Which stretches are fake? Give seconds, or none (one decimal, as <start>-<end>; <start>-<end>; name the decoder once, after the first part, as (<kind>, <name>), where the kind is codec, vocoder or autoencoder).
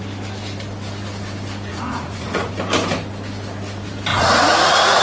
1.7-2.5 (vocoder, Vocos); 4.1-5.0